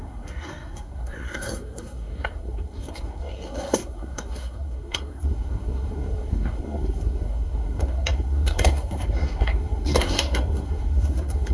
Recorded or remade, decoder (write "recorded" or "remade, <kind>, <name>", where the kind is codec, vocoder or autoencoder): remade, codec, SNAC